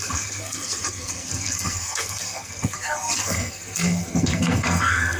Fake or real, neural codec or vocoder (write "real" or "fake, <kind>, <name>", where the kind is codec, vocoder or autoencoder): fake, codec, SNAC